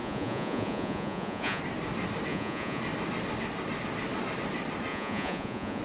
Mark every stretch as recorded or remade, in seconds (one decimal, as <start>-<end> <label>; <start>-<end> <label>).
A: 0.0-1.6 remade; 1.6-2.3 recorded; 2.3-2.8 remade; 2.8-4.9 recorded; 4.9-5.8 remade